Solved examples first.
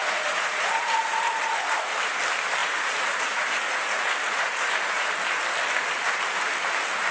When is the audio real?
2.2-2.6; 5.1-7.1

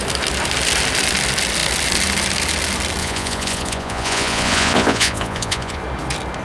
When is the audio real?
0.0-3.0; 5.8-6.4